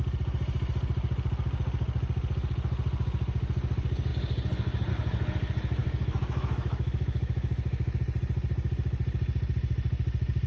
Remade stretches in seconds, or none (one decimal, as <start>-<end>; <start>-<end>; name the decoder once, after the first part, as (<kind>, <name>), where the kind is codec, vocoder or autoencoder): 5.8-8.0 (autoencoder, DAC-VAE)